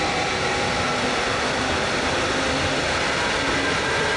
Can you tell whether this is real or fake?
real